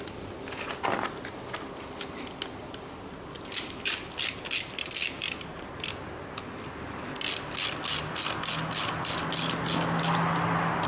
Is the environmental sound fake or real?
real